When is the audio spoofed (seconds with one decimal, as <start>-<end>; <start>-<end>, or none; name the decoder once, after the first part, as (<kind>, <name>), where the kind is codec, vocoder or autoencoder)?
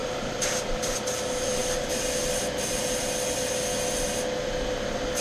0.0-0.5 (vocoder, BigVGAN v2)